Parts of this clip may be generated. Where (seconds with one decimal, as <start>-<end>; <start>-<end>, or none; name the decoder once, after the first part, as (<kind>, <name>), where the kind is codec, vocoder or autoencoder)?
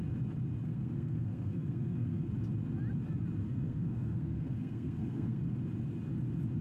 0.7-2.3 (codec, SNAC); 3.4-5.4